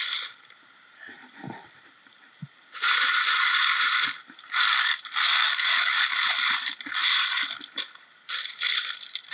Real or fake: fake